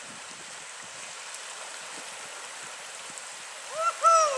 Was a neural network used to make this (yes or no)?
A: no